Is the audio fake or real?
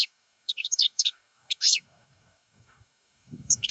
fake